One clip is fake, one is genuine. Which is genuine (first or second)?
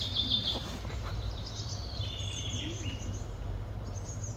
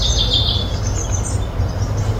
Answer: second